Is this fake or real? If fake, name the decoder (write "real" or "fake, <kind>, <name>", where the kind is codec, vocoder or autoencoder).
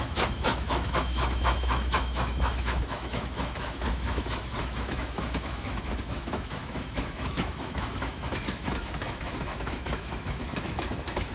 fake, autoencoder, DAC-VAE